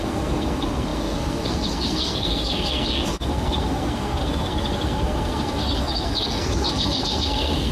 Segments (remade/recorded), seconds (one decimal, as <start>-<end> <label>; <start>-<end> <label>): 0.0-7.7 remade